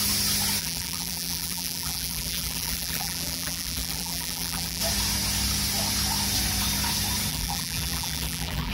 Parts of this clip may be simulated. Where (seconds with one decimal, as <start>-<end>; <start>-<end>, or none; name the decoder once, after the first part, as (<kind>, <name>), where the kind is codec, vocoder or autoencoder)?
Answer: 0.6-4.8 (vocoder, BigVGAN v2); 7.3-8.7